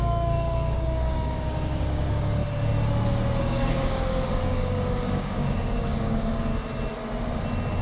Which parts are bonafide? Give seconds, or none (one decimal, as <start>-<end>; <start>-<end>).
2.4-3.4; 6.5-7.8